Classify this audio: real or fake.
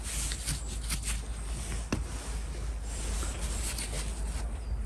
real